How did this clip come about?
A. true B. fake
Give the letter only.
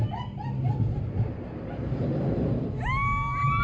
A